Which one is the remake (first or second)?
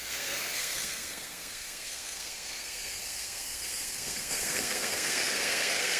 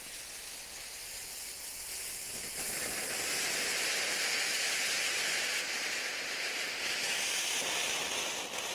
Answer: first